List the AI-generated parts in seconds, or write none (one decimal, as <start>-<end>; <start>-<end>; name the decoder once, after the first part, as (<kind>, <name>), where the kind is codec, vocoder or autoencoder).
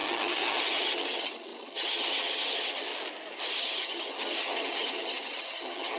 0.0-2.9 (vocoder, HiFi-GAN); 3.6-6.0